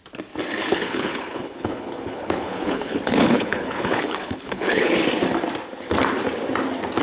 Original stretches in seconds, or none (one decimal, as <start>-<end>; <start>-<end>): 0.0-0.7; 4.9-7.0